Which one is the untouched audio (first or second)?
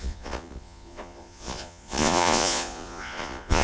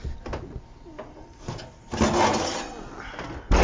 second